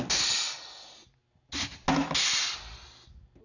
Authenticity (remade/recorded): recorded